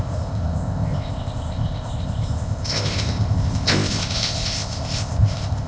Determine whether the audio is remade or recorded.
remade